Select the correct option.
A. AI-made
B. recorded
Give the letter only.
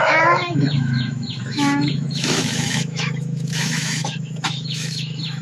A